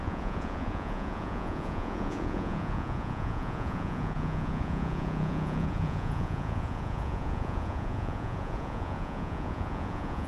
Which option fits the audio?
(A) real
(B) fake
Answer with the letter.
B